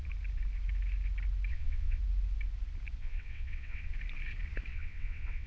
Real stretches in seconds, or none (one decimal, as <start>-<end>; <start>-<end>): 0.0-1.5; 2.0-3.0; 3.9-4.7